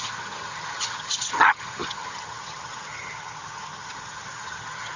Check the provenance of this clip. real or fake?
fake